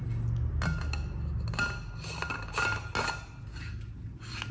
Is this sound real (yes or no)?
yes